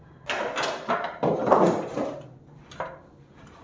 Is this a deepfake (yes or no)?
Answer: no